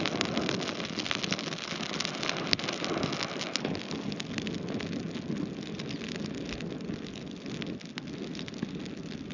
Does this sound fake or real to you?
real